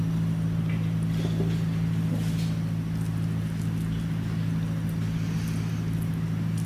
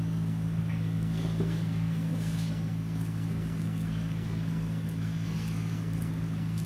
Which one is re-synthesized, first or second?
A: second